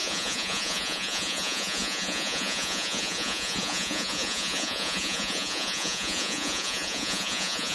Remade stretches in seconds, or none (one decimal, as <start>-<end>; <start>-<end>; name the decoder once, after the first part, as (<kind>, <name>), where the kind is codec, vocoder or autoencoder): 0.0-7.7 (vocoder, Vocos)